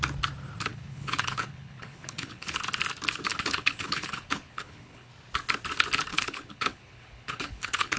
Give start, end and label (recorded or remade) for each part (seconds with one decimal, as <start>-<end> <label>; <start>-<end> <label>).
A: 0.0-0.7 recorded; 0.7-2.6 remade; 2.6-3.3 recorded; 3.3-5.1 remade; 5.1-6.1 recorded; 6.1-8.0 remade